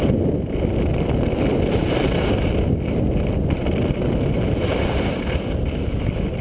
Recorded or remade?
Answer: recorded